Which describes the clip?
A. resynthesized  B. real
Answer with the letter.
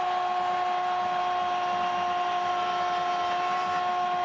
B